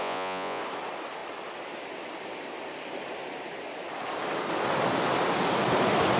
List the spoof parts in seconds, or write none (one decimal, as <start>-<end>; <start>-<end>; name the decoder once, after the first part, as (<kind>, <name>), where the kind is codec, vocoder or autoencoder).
0.0-0.6 (vocoder, Vocos)